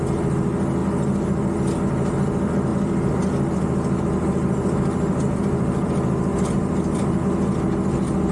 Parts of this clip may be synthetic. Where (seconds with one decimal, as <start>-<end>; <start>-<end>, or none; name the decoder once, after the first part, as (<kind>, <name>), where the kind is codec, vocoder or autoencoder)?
2.7-7.2 (vocoder, BigVGAN v2)